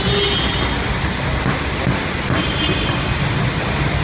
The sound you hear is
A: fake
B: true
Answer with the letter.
B